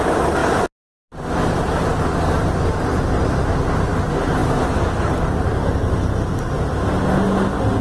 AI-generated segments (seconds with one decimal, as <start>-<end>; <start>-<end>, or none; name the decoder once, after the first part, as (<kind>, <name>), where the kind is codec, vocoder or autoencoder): none